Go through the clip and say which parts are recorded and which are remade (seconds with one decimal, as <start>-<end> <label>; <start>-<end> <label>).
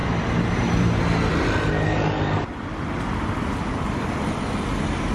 0.0-1.0 remade; 1.0-5.1 recorded